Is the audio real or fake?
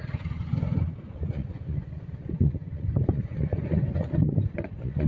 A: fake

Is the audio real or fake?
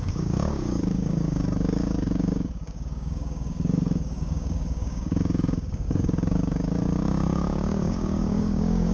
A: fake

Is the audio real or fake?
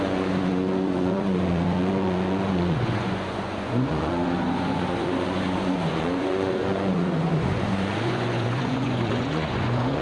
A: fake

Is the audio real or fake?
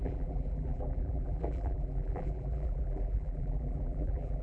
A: fake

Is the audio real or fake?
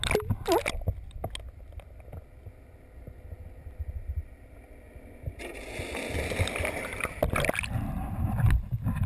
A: real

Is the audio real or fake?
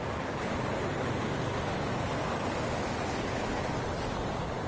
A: real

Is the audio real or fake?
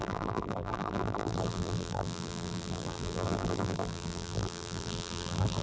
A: fake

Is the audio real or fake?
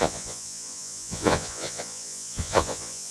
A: fake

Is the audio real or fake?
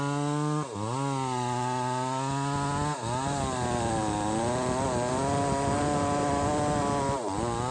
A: real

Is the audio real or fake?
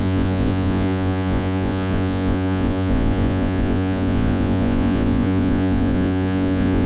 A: fake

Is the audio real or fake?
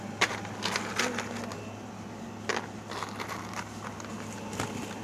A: real